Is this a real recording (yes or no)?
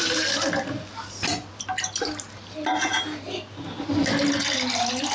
yes